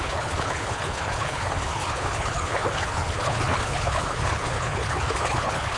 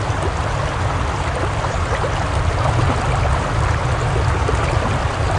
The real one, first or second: second